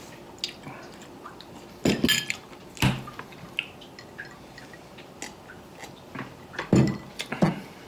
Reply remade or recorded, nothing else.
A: recorded